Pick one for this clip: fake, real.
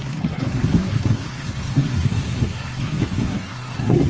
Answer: fake